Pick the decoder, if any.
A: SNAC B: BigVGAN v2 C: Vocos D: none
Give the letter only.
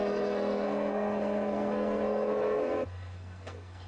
A